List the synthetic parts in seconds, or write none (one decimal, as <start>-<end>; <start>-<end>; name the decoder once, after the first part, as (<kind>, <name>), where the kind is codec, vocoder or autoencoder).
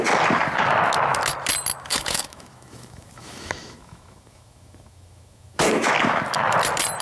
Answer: 1.7-5.9 (autoencoder, DAC-VAE)